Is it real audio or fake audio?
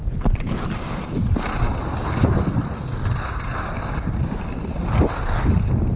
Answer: real